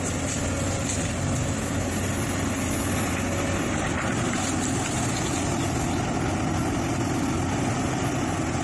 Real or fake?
real